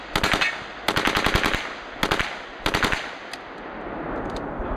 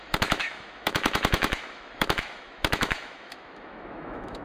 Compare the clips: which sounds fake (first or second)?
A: second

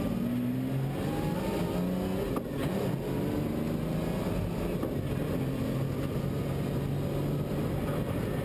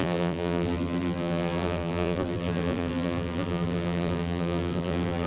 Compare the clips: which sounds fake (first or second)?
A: second